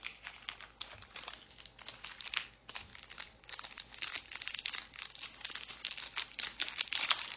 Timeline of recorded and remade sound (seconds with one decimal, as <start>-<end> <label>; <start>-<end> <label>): 0.0-7.4 recorded